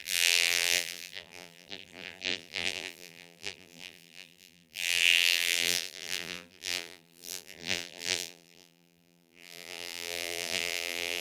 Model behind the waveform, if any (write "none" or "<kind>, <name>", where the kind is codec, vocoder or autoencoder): vocoder, BigVGAN v2